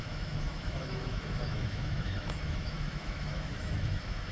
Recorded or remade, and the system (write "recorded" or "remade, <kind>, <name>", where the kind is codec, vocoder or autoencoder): remade, autoencoder, DAC-VAE